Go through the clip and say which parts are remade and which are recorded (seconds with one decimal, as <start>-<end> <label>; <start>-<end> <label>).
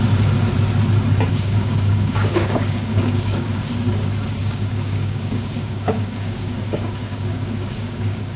0.0-1.3 recorded; 1.3-3.7 remade; 3.7-4.4 recorded; 4.4-8.4 remade